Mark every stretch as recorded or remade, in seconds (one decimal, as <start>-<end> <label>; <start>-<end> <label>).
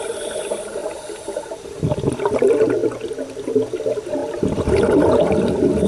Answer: 0.0-5.9 recorded